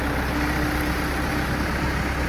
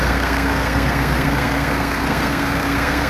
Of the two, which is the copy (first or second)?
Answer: second